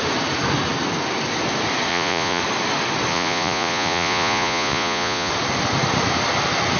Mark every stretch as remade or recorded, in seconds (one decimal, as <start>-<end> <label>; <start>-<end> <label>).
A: 0.0-1.9 recorded; 1.9-2.4 remade; 2.4-3.1 recorded; 3.1-5.3 remade; 5.3-6.8 recorded